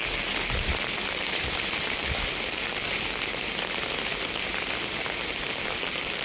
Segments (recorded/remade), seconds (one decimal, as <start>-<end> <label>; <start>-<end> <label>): 0.0-6.2 recorded